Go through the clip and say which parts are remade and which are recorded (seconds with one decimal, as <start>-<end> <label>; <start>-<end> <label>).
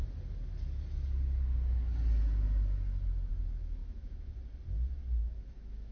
0.0-3.8 recorded; 3.8-4.3 remade; 4.3-5.2 recorded; 5.2-5.9 remade